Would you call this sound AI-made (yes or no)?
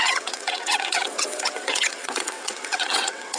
yes